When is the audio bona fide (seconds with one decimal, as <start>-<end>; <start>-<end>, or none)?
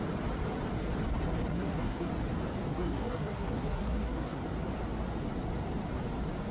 0.0-1.5; 2.1-2.7; 4.4-6.5